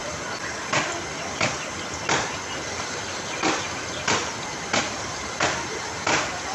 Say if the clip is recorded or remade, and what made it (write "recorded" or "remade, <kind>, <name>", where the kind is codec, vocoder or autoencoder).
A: recorded